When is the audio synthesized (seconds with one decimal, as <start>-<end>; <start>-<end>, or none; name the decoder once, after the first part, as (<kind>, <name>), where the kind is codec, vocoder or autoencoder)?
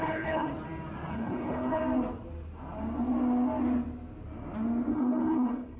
0.0-0.5 (codec, HILCodec); 1.1-1.8; 4.9-5.8